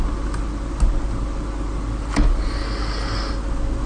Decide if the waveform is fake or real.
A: real